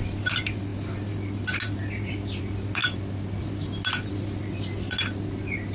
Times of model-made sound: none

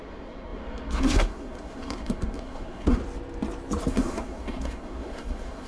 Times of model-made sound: 0.0-3.0 (codec, SNAC); 3.9-5.7

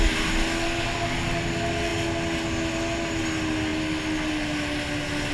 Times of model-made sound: none

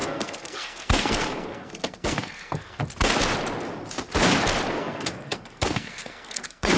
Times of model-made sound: 0.0-2.8 (codec, SNAC); 4.7-6.8

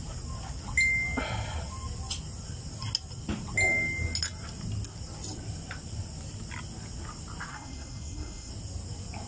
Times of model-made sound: 7.5-8.5 (codec, SNAC)